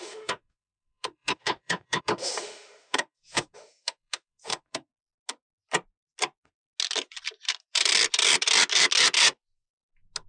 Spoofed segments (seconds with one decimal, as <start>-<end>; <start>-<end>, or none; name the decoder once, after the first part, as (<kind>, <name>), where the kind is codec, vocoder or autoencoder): 0.0-4.9 (autoencoder, DAC-VAE)